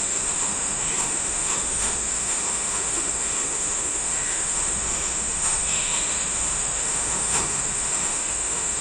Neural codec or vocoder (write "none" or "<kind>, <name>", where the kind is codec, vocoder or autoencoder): autoencoder, DAC-VAE